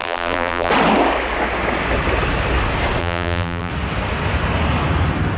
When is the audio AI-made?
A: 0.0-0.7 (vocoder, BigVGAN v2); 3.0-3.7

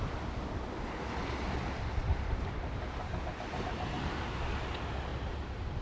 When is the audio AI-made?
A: 2.0-4.4 (vocoder, BigVGAN v2); 5.1-5.8

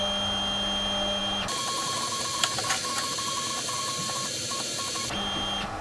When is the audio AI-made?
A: none

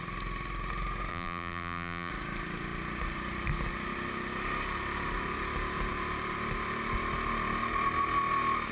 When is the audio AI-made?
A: 1.1-2.1 (vocoder, BigVGAN v2)

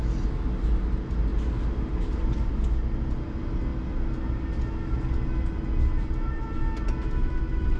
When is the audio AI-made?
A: 1.3-2.5 (vocoder, BigVGAN v2)

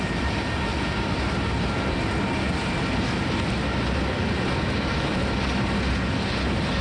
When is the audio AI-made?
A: 0.7-1.8 (vocoder, BigVGAN v2)